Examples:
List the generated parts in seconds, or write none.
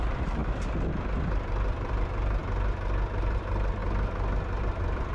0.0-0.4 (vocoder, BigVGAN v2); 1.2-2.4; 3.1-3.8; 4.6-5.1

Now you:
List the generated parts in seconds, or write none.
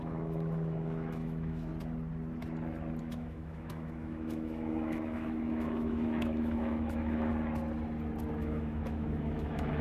0.0-1.7 (autoencoder, DAC-VAE); 3.0-7.3; 8.4-9.8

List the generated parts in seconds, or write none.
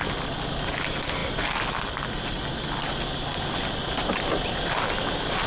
none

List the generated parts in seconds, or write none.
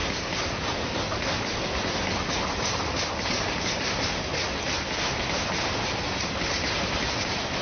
none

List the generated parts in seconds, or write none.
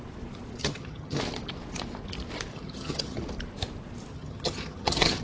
0.6-1.2 (vocoder, HiFi-GAN); 2.5-3.2; 4.1-5.2